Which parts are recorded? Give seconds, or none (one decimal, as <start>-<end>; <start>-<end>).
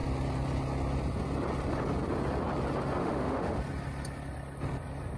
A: 0.0-3.0; 3.6-5.2